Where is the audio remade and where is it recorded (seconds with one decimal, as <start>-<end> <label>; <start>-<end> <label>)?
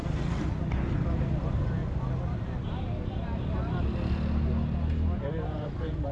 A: 0.0-1.2 recorded; 1.2-1.8 remade; 1.8-5.3 recorded; 5.3-6.1 remade